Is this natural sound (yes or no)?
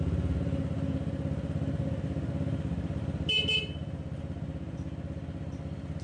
yes